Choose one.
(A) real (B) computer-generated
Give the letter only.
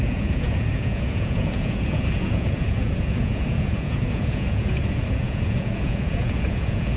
B